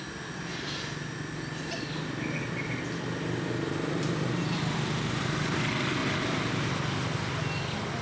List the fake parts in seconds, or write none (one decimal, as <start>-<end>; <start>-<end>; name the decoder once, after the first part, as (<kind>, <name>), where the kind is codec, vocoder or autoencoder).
none